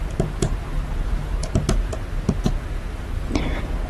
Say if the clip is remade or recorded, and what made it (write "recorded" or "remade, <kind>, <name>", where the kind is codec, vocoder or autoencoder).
recorded